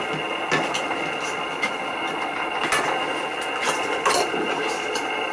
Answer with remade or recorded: recorded